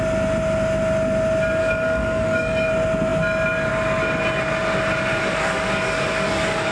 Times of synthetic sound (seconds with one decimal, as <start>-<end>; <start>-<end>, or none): 1.6-2.7; 5.1-6.7